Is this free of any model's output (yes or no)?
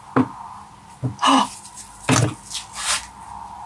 yes